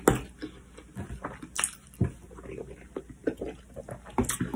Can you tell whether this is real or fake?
real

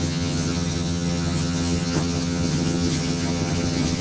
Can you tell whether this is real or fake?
fake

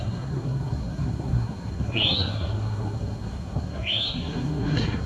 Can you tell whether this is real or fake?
fake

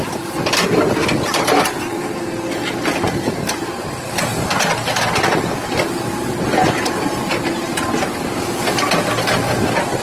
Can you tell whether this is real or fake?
real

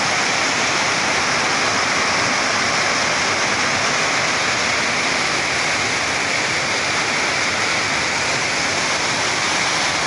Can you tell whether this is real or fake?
real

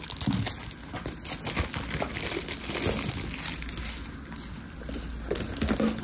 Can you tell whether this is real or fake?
real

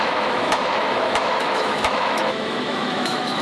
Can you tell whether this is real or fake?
fake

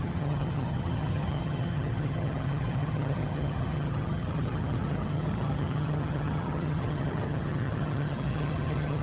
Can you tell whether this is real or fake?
fake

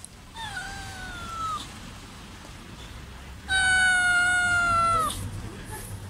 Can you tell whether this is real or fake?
real